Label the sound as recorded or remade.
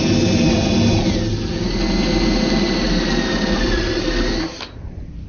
recorded